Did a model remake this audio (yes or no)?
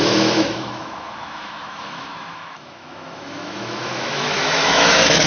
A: yes